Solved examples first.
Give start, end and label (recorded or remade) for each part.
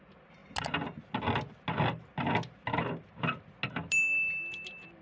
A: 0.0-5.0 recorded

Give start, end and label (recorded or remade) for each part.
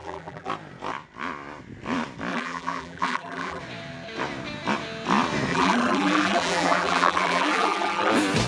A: 0.0-0.5 remade; 0.5-2.3 recorded; 2.3-3.6 remade; 3.6-5.5 recorded; 5.5-8.1 remade; 8.1-8.5 recorded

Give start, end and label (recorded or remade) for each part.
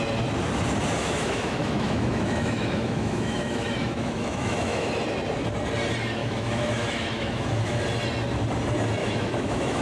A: 0.0-1.0 recorded; 1.0-4.9 remade; 4.9-6.2 recorded; 6.2-7.8 remade; 7.8-9.0 recorded; 9.0-9.8 remade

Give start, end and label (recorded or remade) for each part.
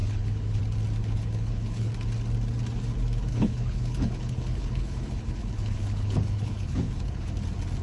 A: 0.0-0.6 remade; 0.6-1.0 recorded; 1.0-1.9 remade; 1.9-3.3 recorded; 3.3-7.3 remade; 7.3-7.8 recorded